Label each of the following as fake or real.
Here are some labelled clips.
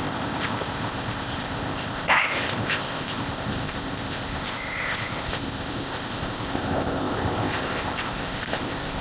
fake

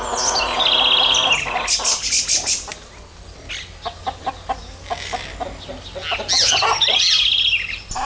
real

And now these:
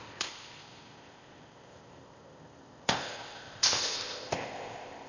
fake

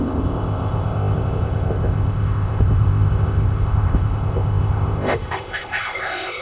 fake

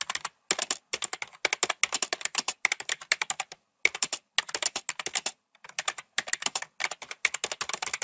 real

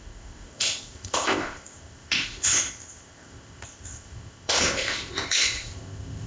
fake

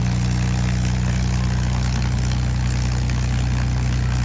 real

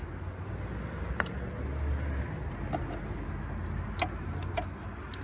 real